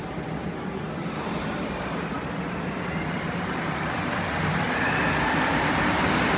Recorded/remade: recorded